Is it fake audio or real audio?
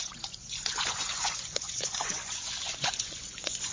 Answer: fake